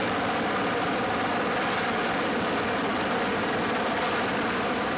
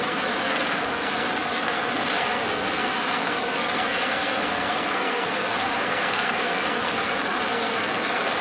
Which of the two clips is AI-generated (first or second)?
second